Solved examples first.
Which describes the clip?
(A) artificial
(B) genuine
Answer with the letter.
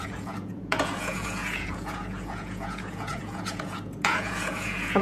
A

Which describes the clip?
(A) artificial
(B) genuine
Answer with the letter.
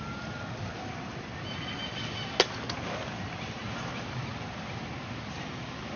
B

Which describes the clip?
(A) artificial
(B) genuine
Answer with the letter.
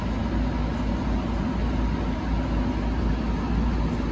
B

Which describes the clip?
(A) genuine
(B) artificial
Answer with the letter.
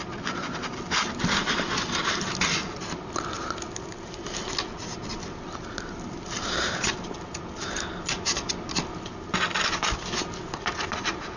A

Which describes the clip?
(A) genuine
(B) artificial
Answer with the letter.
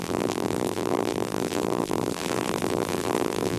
B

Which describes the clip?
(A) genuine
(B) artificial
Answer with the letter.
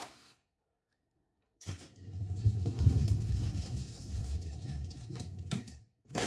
B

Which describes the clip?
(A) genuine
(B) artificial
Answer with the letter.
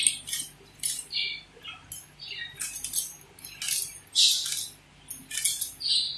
A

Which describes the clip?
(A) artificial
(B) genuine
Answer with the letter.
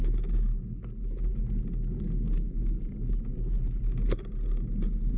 B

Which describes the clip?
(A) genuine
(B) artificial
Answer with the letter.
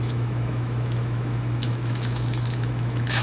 B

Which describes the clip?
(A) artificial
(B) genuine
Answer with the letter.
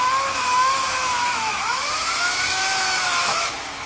A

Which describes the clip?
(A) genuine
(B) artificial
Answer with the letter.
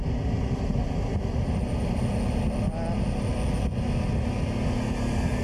A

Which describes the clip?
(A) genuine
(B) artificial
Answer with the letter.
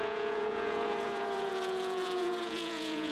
B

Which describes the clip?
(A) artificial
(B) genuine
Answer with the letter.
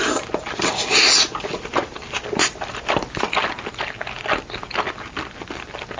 B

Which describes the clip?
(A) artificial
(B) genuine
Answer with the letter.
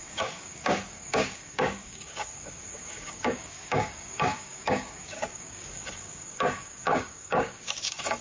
A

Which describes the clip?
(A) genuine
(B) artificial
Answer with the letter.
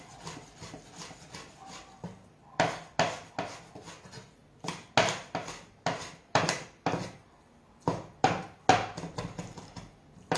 A